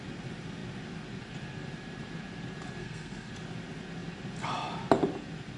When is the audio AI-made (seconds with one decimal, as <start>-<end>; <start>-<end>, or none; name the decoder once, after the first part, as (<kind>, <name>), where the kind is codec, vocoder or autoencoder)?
2.8-3.3 (codec, SNAC)